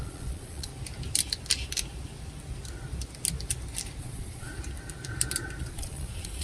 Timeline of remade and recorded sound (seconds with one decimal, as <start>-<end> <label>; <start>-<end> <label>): 0.0-0.7 remade; 0.7-4.0 recorded; 4.0-4.5 remade; 4.5-5.6 recorded; 5.6-6.4 remade